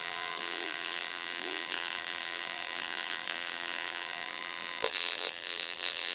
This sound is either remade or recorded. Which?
remade